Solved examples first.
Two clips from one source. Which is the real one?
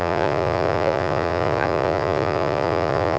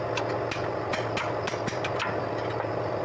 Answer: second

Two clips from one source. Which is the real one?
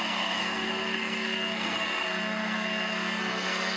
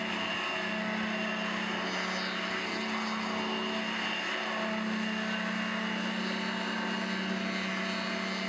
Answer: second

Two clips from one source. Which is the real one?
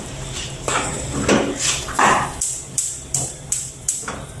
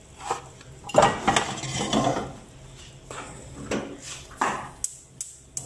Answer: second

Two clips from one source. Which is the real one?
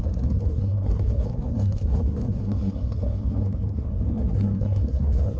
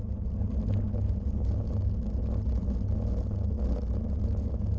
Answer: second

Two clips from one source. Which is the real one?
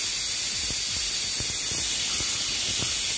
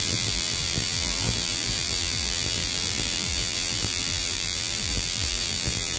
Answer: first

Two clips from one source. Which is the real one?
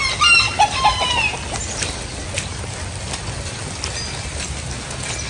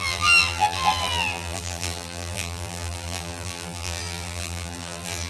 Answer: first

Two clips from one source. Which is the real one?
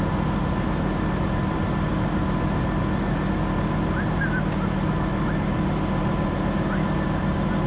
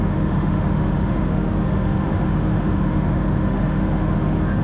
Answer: first